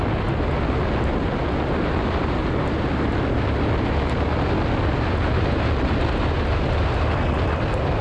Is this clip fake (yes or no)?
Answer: no